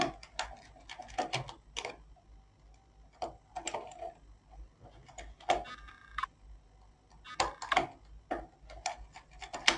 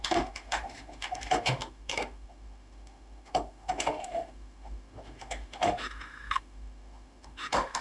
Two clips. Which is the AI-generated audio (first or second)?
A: second